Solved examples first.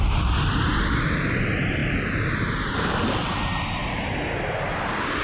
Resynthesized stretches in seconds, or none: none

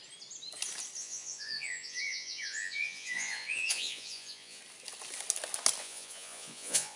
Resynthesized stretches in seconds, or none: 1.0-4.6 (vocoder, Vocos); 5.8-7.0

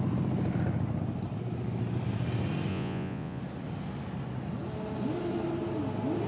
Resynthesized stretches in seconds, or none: 2.7-3.4 (vocoder, Vocos)